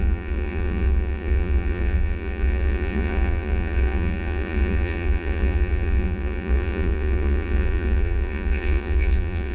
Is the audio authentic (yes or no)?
no